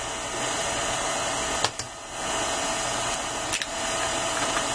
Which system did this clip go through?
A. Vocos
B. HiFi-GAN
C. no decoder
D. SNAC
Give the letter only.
C